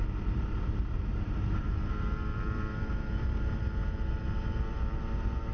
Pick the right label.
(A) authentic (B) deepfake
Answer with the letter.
B